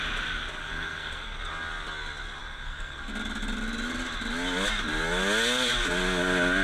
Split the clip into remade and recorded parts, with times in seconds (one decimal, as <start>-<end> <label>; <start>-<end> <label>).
0.0-0.6 recorded; 0.6-1.5 remade; 1.5-2.4 recorded; 2.4-3.0 remade; 3.0-6.6 recorded